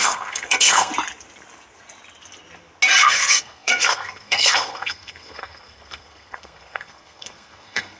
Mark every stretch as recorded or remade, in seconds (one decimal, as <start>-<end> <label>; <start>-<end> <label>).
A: 0.0-0.9 remade; 0.9-3.0 recorded; 3.0-8.0 remade